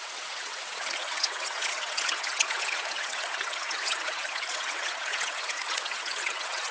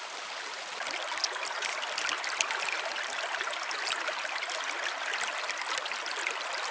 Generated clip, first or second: first